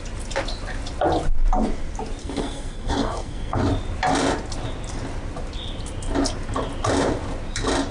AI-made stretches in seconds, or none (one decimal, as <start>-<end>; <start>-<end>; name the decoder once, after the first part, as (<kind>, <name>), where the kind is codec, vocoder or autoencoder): 2.2-3.6 (codec, SNAC)